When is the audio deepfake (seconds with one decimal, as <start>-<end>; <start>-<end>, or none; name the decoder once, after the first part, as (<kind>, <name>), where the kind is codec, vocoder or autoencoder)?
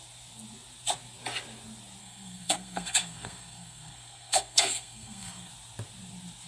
2.0-5.5 (codec, SNAC)